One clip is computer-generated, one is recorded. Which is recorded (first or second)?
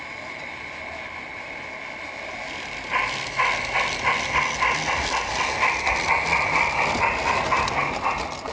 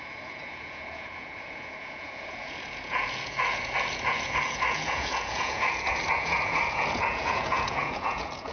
first